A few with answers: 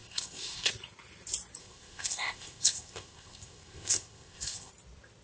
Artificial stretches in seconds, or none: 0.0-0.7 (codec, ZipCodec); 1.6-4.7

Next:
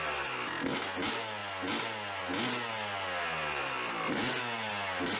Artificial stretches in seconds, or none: none

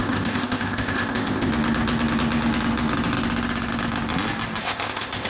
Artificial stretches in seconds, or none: 0.0-1.5 (codec, ZipCodec); 4.6-5.3

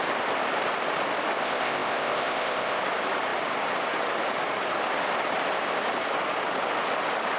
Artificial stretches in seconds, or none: 1.4-2.8 (codec, ZipCodec)

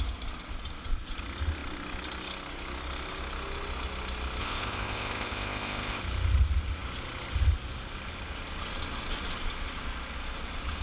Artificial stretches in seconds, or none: 4.4-6.0 (codec, ZipCodec)